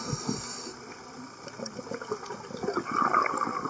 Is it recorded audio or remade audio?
recorded